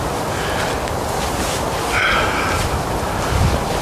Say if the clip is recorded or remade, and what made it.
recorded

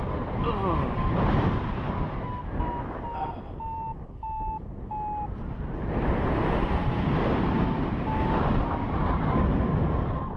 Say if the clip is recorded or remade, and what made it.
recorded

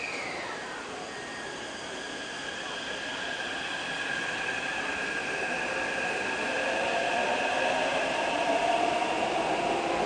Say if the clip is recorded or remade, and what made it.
remade, vocoder, BigVGAN v2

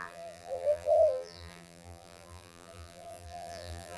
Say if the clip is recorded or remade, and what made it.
remade, vocoder, BigVGAN v2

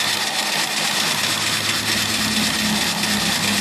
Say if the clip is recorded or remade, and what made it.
recorded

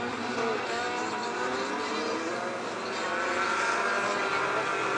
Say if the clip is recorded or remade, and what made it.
recorded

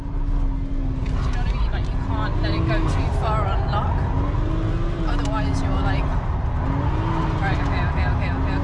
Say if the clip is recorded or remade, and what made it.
recorded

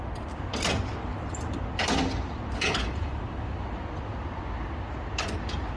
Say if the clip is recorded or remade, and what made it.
recorded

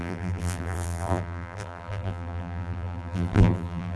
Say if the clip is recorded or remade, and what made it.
remade, vocoder, BigVGAN v2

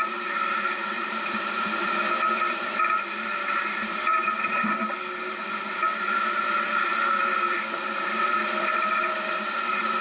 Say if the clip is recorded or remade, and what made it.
remade, vocoder, BigVGAN v2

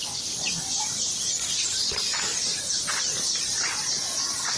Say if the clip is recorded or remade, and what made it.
recorded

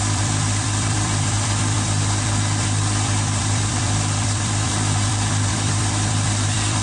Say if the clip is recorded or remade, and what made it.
remade, vocoder, BigVGAN v2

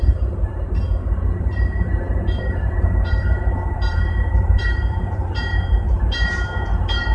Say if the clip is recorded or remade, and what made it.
remade, vocoder, BigVGAN v2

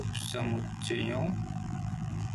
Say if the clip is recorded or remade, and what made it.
remade, vocoder, BigVGAN v2